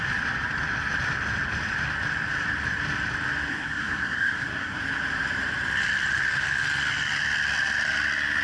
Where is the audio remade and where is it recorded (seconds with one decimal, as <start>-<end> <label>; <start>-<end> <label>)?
0.0-3.5 recorded; 3.5-4.8 remade; 4.8-8.4 recorded